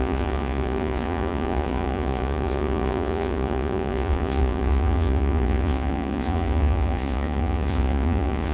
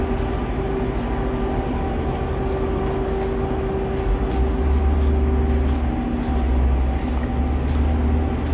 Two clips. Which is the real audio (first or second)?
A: second